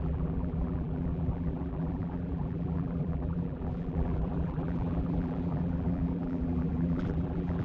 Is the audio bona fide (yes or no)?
no